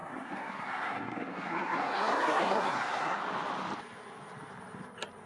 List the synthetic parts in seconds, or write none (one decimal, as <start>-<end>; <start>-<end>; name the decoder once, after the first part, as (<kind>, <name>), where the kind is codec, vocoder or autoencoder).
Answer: 0.0-3.2 (codec, SNAC)

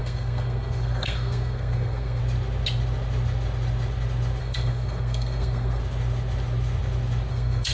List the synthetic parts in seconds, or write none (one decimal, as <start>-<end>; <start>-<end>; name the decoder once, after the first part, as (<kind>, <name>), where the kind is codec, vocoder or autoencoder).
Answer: 0.0-2.2 (codec, SNAC); 4.4-5.8; 7.3-7.7